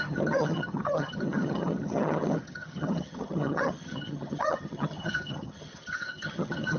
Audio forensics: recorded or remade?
remade